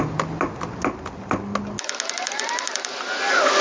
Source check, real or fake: real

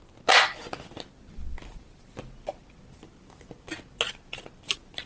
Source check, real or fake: real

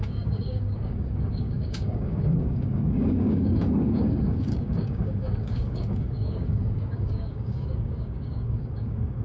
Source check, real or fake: fake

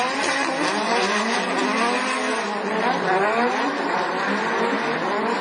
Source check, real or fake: real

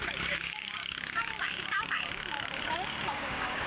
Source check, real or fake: fake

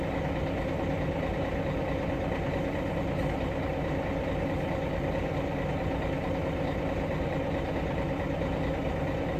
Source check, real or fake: real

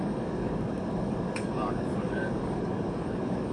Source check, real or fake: fake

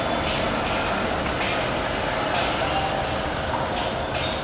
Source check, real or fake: real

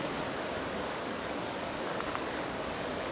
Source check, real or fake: fake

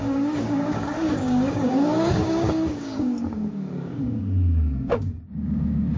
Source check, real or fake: fake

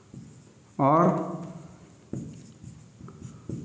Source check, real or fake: real